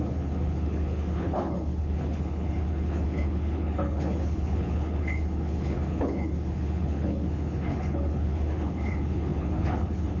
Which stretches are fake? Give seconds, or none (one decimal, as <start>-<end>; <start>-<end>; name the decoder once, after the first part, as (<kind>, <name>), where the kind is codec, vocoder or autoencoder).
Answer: 0.0-10.2 (codec, HILCodec)